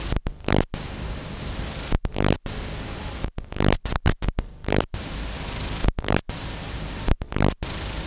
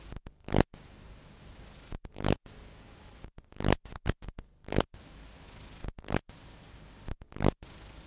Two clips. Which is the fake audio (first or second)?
first